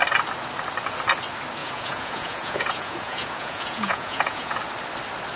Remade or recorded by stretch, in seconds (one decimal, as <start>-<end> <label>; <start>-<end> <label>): 0.0-1.6 recorded; 1.6-4.6 remade; 4.6-5.4 recorded

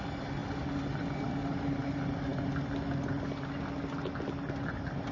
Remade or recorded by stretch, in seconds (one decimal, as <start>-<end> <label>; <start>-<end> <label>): 0.0-5.1 recorded

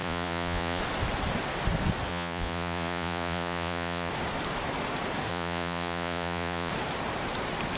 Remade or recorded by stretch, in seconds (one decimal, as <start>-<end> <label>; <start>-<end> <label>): 0.0-0.8 remade; 0.8-2.1 recorded; 2.1-4.1 remade; 4.1-5.3 recorded; 5.3-6.7 remade; 6.7-7.8 recorded

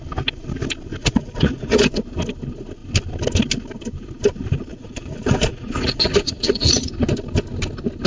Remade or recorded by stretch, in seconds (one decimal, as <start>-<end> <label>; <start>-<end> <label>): 0.0-1.0 recorded; 1.0-2.0 remade; 2.0-4.7 recorded; 4.7-6.9 remade; 6.9-8.1 recorded

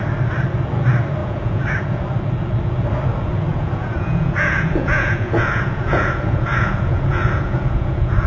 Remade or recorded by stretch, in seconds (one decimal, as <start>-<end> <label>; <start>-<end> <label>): 0.0-1.2 recorded; 1.2-2.0 remade; 2.0-3.5 recorded; 3.5-8.3 remade

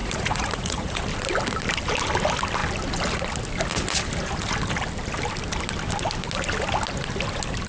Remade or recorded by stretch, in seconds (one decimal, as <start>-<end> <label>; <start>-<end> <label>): 0.0-1.0 remade; 1.0-7.7 recorded

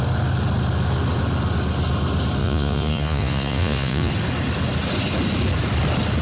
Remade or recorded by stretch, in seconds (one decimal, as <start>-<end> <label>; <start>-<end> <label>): 0.0-2.4 recorded; 2.4-4.1 remade; 4.1-6.2 recorded